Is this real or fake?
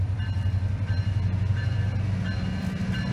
real